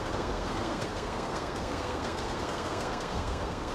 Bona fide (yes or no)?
no